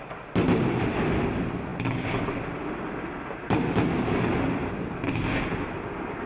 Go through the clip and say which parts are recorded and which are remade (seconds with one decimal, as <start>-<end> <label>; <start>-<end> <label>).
0.0-6.3 recorded